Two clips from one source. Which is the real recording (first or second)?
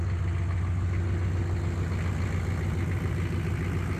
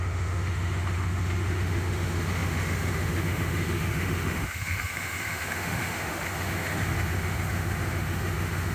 first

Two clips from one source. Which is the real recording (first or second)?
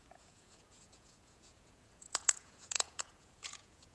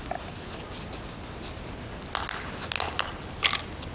second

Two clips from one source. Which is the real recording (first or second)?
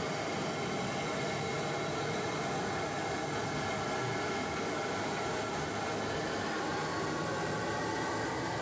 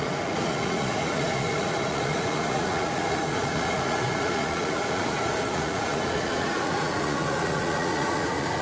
first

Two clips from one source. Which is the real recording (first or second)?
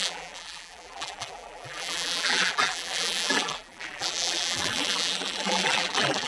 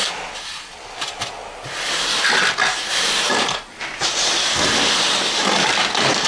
second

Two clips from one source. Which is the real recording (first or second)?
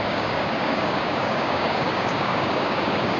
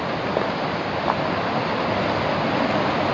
second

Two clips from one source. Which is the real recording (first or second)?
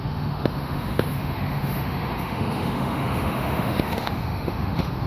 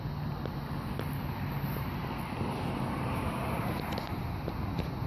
second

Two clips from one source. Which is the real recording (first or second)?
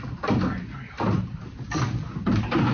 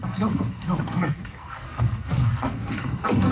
first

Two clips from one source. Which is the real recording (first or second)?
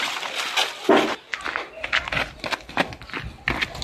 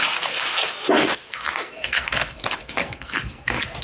first